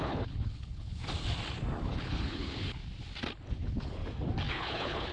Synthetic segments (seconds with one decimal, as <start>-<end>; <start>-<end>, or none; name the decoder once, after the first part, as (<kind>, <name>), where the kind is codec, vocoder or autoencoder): 0.0-1.0 (codec, HILCodec); 1.9-2.8; 3.5-4.0; 4.5-5.1